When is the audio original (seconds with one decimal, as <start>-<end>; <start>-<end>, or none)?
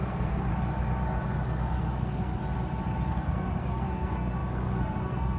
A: 0.5-1.8; 2.4-3.1